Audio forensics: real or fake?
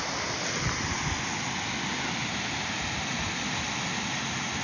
real